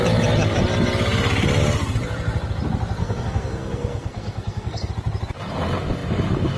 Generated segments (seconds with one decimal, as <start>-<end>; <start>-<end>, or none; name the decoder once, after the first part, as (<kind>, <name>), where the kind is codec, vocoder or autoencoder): 3.0-4.9 (codec, SNAC)

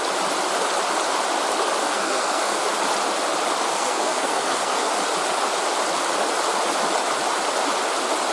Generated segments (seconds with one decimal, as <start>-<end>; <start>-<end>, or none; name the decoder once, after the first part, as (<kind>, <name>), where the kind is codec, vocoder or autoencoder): 1.8-2.6 (codec, SNAC); 3.7-4.9

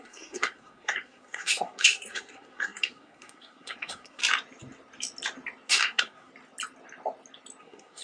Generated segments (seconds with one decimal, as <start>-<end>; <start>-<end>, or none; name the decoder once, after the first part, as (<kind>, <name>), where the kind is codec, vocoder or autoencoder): 0.0-4.2 (codec, SNAC); 5.7-6.3; 7.6-8.0

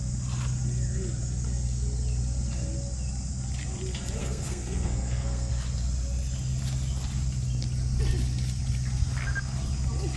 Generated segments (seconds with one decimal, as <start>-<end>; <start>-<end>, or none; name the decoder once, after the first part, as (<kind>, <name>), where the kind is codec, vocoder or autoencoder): 4.2-5.5 (codec, SNAC)

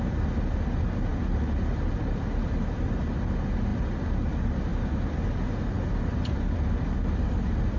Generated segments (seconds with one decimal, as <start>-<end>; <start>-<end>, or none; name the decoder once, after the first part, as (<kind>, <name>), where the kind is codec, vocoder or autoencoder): none

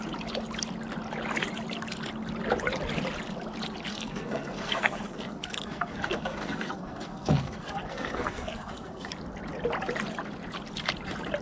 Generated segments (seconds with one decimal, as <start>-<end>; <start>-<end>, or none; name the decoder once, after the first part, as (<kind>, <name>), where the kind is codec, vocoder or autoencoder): 3.9-9.1 (codec, SNAC)